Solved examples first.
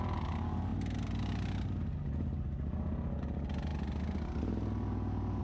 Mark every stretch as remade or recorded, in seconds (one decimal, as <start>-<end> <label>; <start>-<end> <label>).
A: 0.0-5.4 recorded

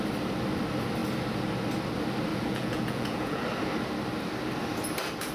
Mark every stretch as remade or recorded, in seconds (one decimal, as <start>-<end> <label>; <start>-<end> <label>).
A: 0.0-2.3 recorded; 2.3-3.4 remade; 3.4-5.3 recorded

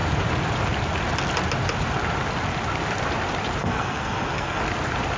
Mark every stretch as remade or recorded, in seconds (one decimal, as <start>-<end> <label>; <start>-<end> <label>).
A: 0.0-3.6 recorded; 3.6-4.6 remade; 4.6-5.2 recorded

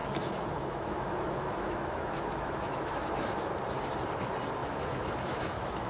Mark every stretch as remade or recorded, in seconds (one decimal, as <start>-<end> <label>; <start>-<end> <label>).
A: 0.0-3.5 remade; 3.5-4.6 recorded; 4.6-5.9 remade